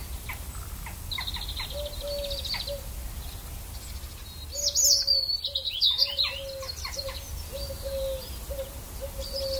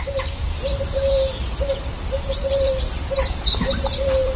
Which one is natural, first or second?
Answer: first